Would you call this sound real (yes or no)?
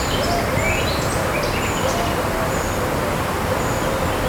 yes